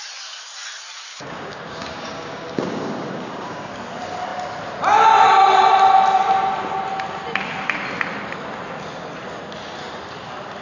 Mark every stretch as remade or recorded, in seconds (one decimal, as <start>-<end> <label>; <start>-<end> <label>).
0.0-1.1 recorded; 1.1-3.7 remade; 3.7-10.6 recorded